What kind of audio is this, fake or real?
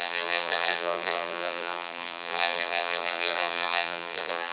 fake